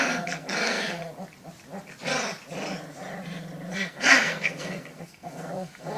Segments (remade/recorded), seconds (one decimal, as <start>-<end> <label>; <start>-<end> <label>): 0.0-1.0 remade; 1.0-3.7 recorded; 3.7-6.0 remade